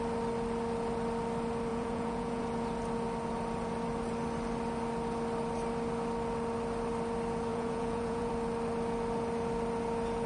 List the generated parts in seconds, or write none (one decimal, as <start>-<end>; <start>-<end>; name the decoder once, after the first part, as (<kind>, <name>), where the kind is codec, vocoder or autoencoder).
1.7-2.4 (vocoder, Vocos); 7.5-8.3

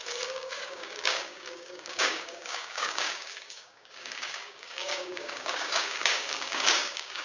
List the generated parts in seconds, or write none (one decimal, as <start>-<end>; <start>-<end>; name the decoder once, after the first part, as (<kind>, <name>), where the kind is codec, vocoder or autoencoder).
0.0-7.2 (codec, DAC)

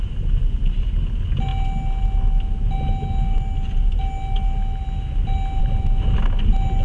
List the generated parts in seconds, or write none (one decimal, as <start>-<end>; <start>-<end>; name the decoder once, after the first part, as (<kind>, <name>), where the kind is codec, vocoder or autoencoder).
none

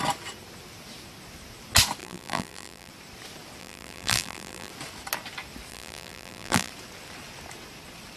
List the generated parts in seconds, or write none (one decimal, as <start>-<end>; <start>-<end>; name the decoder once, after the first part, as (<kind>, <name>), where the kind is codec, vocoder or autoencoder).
2.0-2.9 (vocoder, BigVGAN v2); 3.6-4.7; 5.7-6.7

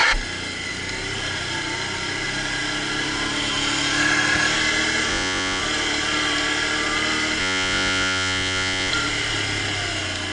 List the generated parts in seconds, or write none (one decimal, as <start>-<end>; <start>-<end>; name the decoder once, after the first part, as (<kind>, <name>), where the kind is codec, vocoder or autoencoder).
5.1-5.6 (vocoder, Vocos); 7.4-8.9

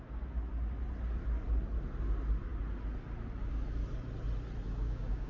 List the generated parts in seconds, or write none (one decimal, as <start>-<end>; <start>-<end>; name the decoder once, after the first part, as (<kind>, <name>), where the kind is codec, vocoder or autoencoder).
4.7-5.3 (codec, DAC)

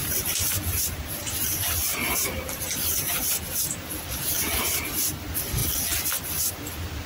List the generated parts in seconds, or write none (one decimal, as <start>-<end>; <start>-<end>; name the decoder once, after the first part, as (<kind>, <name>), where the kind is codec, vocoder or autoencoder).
0.0-1.1 (vocoder, BigVGAN v2)

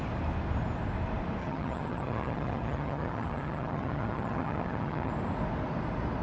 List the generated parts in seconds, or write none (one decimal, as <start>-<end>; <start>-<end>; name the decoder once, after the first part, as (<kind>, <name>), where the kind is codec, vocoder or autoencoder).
1.4-5.1 (vocoder, HiFi-GAN)